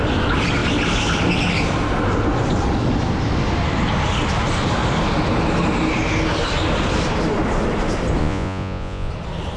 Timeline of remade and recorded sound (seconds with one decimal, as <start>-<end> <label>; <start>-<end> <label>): 0.0-8.2 recorded; 8.2-9.1 remade; 9.1-9.6 recorded